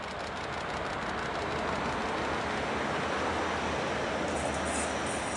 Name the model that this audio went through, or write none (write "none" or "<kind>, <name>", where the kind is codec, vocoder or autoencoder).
none